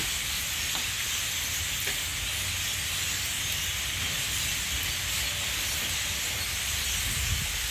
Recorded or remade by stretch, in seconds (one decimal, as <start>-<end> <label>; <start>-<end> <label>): 0.0-7.7 recorded

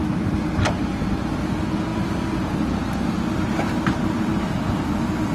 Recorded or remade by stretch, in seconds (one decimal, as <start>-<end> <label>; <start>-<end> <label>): 0.0-0.8 remade; 0.8-1.9 recorded; 1.9-5.3 remade